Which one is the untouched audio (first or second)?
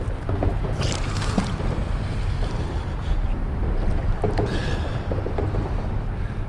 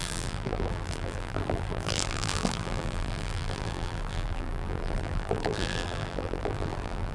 first